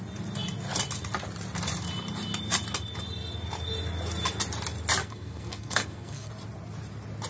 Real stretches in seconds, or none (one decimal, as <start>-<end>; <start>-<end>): 0.0-5.0; 6.3-7.3

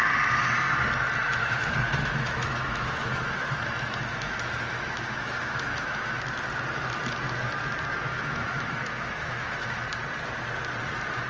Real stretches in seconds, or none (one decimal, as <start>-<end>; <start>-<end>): 0.0-1.4; 6.2-8.1; 9.8-11.3

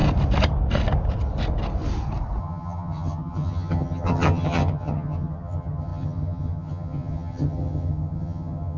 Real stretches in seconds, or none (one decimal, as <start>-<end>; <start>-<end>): 0.0-2.4

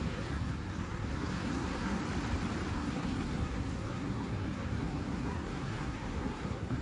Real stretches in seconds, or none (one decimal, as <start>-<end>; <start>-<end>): 2.0-2.7

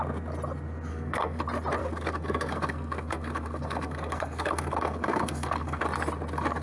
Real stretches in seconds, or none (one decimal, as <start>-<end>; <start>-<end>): 0.0-0.9; 1.4-1.8; 5.8-6.6

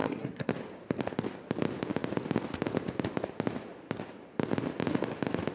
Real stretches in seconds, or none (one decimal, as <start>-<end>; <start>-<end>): 0.5-5.5

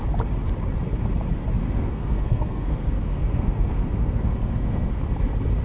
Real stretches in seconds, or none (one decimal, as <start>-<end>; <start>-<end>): 0.0-1.6; 5.0-5.6

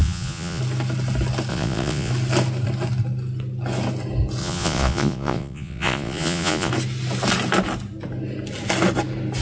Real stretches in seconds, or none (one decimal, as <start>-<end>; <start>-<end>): 0.6-1.5; 2.1-4.4; 6.7-9.4